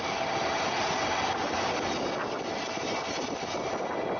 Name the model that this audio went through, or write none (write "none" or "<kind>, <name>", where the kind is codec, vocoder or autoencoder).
none